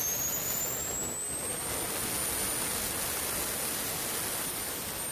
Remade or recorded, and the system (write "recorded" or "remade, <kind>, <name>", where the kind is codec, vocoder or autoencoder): recorded